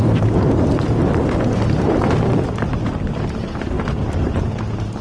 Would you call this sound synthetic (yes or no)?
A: no